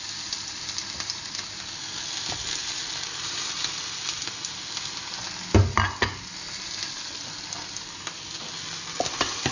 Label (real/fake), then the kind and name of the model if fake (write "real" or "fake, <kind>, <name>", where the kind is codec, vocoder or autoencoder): real